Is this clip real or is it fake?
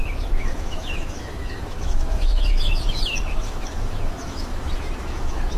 fake